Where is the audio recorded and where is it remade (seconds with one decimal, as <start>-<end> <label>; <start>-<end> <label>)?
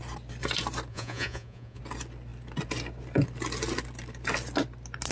0.0-0.9 recorded; 0.9-1.8 remade; 1.8-5.1 recorded